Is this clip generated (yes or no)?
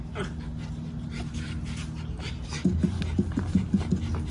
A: no